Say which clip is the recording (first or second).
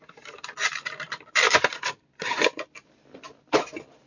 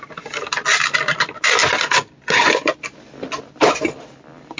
second